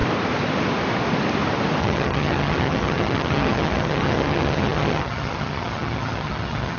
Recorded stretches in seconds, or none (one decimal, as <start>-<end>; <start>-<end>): 0.0-1.8